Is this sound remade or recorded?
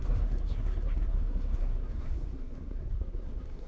remade